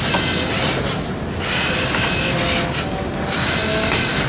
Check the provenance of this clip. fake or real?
real